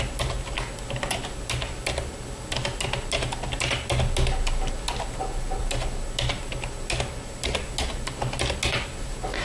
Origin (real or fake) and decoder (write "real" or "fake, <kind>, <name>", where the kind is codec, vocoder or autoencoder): real